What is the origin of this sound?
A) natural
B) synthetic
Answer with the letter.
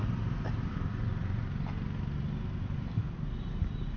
A